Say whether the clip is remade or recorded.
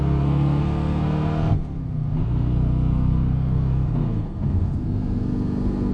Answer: remade